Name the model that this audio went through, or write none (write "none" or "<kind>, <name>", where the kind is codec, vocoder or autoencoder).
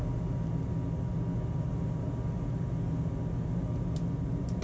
none